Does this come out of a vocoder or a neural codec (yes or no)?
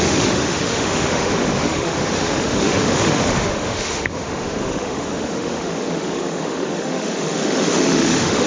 yes